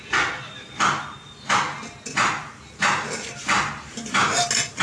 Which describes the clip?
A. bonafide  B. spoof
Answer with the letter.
A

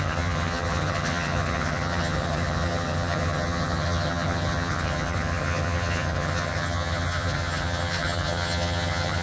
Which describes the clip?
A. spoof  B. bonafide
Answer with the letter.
A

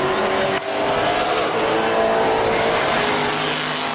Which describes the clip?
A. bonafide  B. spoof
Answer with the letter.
A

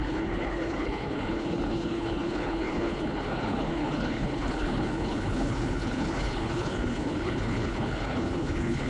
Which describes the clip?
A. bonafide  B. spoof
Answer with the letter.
B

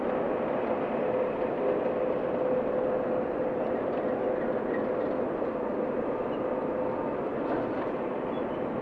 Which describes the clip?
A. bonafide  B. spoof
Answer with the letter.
A